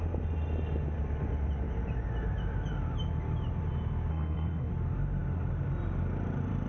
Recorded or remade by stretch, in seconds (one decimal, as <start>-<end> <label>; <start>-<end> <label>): 0.0-4.1 recorded; 4.1-4.7 remade; 4.7-6.7 recorded